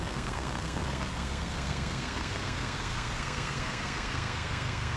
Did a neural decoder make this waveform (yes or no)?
yes